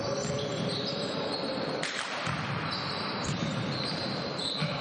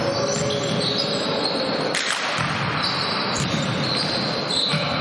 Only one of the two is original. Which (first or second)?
second